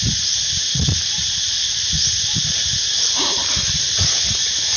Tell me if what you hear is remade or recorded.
remade